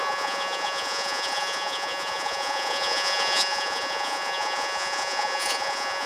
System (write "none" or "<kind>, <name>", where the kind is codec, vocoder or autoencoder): vocoder, Vocos